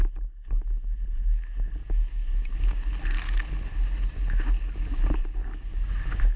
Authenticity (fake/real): real